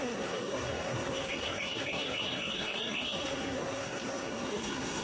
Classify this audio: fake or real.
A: fake